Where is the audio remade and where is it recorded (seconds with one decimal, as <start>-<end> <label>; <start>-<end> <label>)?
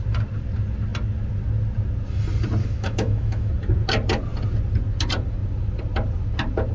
0.0-2.6 recorded; 2.6-3.5 remade; 3.5-6.7 recorded